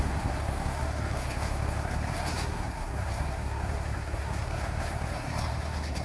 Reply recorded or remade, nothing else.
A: remade